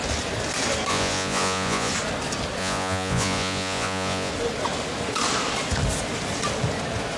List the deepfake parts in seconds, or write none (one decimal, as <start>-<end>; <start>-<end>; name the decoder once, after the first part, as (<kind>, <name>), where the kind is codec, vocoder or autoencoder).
0.9-1.9 (vocoder, Vocos); 2.6-4.3